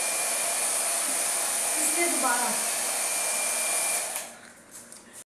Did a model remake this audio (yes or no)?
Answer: no